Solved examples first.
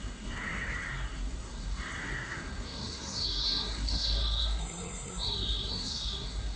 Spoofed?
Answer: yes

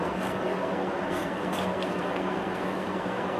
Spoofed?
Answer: yes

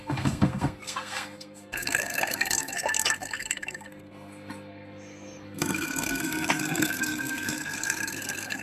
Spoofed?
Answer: yes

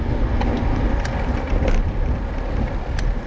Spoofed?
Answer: no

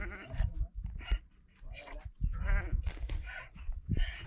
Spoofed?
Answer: no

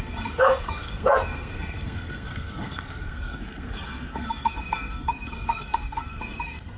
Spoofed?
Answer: yes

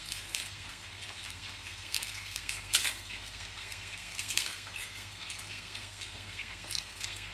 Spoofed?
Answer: yes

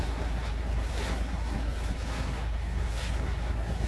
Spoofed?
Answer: yes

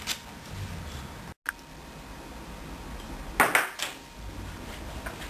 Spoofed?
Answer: no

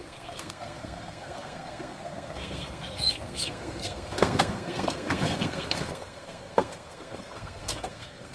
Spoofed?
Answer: yes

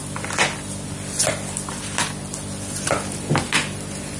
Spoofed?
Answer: no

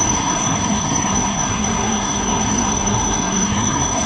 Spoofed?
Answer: yes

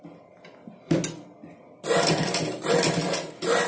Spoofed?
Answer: no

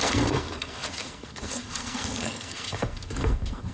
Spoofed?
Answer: yes